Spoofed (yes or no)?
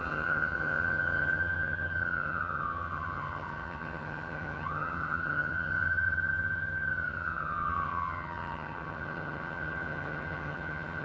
yes